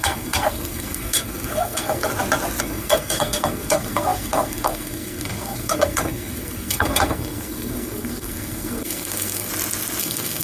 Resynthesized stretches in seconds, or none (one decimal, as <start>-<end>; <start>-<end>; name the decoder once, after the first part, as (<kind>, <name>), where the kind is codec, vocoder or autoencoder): 0.0-2.1 (codec, SNAC); 2.6-9.5; 10.0-10.4